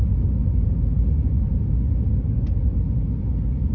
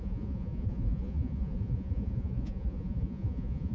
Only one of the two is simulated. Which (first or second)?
second